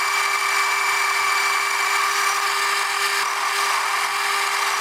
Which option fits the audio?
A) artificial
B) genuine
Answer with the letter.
B